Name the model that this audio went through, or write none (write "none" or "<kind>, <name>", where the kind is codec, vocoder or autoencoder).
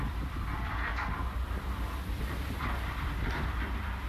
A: vocoder, BigVGAN v2